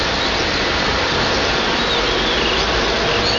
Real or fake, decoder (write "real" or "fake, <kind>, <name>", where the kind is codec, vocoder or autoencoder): real